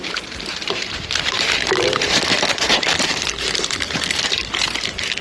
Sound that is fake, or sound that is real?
fake